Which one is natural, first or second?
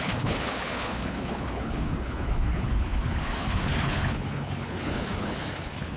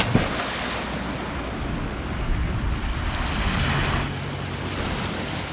second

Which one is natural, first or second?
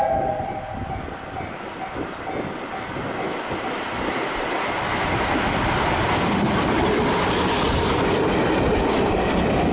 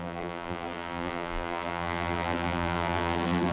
first